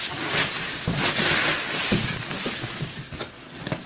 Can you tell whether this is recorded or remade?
recorded